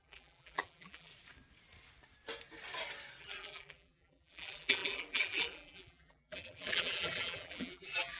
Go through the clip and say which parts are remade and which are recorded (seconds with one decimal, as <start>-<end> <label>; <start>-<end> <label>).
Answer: 0.0-1.1 remade; 1.1-3.2 recorded; 3.2-8.2 remade